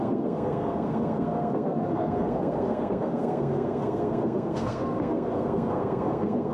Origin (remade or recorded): remade